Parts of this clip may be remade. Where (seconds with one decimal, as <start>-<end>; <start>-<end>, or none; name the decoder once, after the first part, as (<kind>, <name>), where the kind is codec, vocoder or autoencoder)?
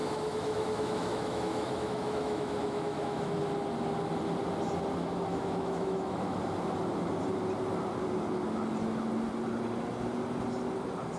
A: 0.0-3.4 (autoencoder, DAC-VAE); 5.3-6.4